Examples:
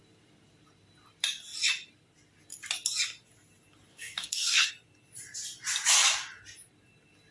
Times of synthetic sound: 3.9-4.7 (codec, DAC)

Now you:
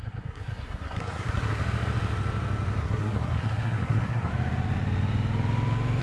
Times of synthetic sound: 0.0-1.6 (codec, SNAC); 2.8-4.3

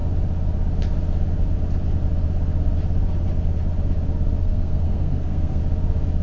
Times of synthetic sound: 4.4-5.6 (codec, SNAC)